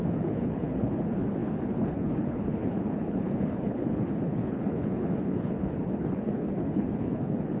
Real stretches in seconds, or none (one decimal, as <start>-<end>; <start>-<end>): none